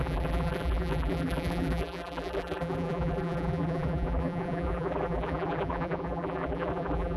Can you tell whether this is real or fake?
fake